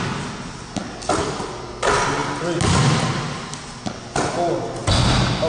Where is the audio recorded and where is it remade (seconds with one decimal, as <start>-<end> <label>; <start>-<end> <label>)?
0.0-5.5 recorded